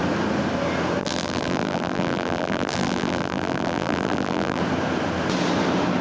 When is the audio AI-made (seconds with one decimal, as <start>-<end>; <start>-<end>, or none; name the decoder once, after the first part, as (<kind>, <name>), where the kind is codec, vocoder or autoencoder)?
1.0-4.6 (vocoder, BigVGAN v2)